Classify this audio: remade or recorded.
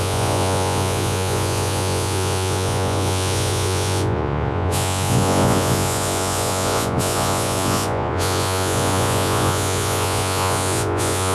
remade